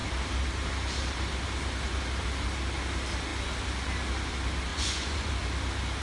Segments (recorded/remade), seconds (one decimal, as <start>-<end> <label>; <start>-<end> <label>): 0.0-4.7 recorded; 4.7-5.3 remade; 5.3-6.0 recorded

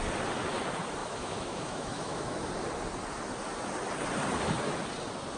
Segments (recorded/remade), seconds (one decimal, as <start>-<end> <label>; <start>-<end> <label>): 0.0-1.0 recorded; 1.0-2.5 remade; 2.5-5.4 recorded

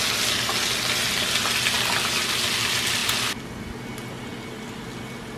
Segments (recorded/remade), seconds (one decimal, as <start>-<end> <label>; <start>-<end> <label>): 0.0-5.4 recorded

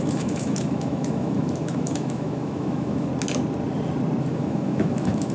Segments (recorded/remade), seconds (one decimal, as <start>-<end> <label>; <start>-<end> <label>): 0.0-3.1 remade; 3.1-4.2 recorded; 4.2-5.3 remade